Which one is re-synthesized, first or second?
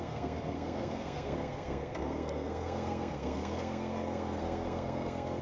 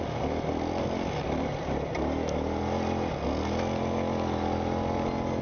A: first